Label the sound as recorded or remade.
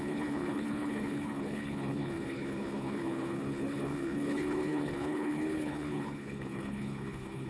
remade